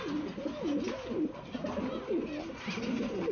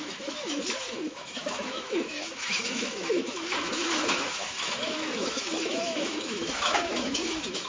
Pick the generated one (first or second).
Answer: second